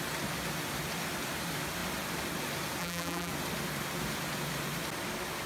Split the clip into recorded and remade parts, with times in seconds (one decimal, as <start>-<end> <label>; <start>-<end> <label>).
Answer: 0.0-2.8 recorded; 2.8-3.3 remade; 3.3-5.5 recorded